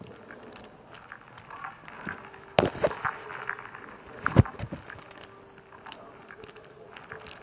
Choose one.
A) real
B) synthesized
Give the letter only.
A